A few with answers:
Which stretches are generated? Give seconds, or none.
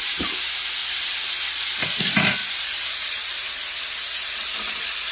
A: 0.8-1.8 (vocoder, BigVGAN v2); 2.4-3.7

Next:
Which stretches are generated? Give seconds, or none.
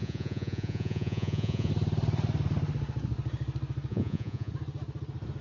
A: 0.0-1.7 (vocoder, Vocos); 3.9-4.5